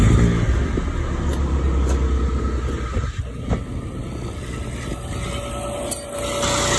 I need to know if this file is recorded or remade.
recorded